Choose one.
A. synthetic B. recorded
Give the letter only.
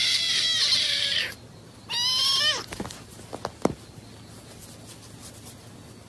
B